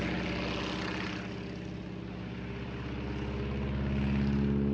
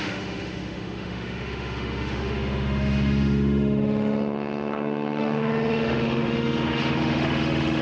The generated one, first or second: second